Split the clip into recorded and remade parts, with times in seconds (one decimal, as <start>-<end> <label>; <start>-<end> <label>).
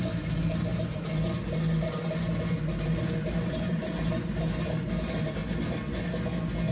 0.0-0.7 remade; 0.7-3.5 recorded; 3.5-5.4 remade; 5.4-6.7 recorded